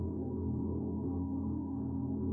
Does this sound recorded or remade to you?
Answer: remade